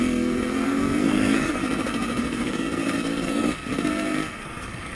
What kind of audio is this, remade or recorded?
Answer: remade